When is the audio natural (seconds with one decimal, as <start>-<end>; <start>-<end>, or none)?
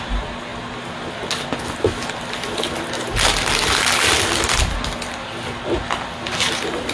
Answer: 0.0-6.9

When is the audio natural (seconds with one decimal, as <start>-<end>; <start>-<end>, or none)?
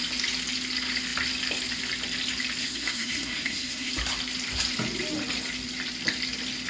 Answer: 0.0-2.6; 3.9-6.7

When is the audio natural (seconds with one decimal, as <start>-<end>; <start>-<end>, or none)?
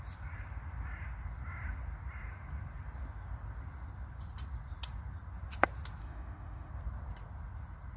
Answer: 0.0-6.0; 6.7-8.0